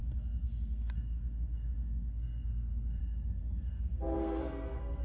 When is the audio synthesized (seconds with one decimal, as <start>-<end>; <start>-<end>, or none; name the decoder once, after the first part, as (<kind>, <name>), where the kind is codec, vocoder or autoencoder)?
0.0-5.0 (codec, SNAC)

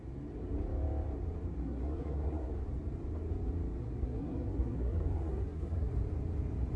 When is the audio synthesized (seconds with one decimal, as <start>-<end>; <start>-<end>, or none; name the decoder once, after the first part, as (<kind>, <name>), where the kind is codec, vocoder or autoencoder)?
1.5-2.5 (codec, SNAC); 3.8-5.9

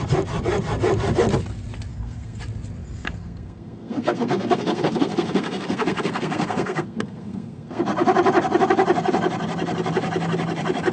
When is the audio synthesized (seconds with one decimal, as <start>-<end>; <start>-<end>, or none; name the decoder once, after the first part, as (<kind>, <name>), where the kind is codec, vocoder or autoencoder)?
1.9-2.4 (codec, SNAC); 2.8-7.8

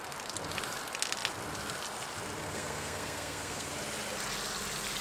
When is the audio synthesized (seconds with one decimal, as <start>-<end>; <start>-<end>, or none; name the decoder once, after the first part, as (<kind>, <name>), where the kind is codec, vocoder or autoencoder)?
2.4-3.7 (codec, SNAC)

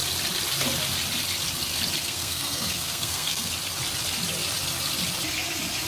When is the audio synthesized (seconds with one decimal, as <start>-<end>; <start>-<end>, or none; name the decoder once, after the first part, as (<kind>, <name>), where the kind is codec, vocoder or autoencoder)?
2.0-3.5 (codec, SNAC)

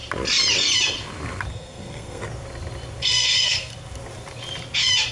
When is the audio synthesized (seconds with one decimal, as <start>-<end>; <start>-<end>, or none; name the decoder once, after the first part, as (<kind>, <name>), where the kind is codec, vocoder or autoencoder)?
1.5-2.2 (codec, SNAC); 3.0-3.7

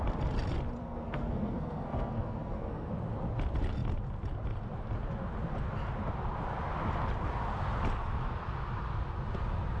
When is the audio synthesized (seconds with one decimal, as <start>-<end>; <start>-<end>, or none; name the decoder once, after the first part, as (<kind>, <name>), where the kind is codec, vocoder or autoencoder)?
0.8-2.9 (codec, SNAC)